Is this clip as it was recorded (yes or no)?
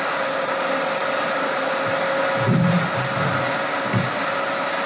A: yes